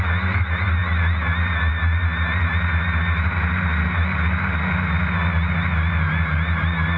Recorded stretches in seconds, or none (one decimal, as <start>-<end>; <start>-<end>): 0.0-7.0